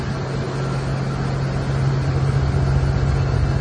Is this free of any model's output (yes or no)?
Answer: yes